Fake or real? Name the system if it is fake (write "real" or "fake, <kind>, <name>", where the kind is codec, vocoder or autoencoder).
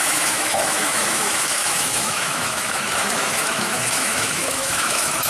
fake, autoencoder, DAC-VAE